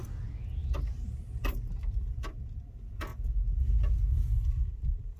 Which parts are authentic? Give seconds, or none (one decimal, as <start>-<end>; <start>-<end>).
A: 3.1-4.7